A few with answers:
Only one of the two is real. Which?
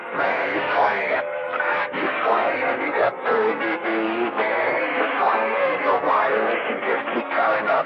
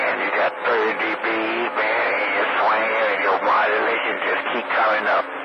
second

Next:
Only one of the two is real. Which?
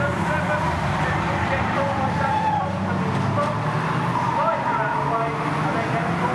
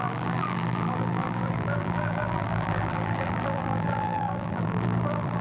first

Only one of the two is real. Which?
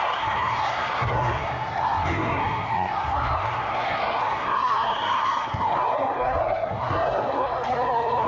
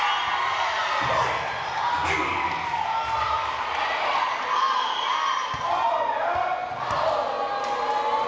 second